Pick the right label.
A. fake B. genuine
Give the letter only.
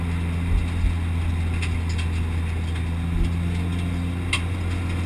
B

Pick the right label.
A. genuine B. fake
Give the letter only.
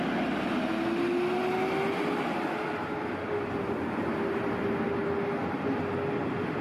A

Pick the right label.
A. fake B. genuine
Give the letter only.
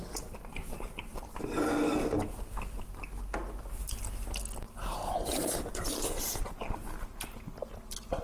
B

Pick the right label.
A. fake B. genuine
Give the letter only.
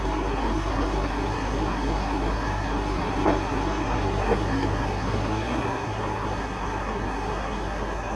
A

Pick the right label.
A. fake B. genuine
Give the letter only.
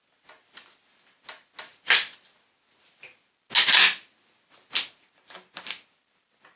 B